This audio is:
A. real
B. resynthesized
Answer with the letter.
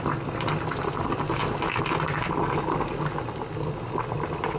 A